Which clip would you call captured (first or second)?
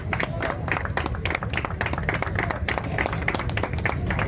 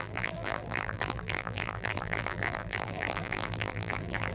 first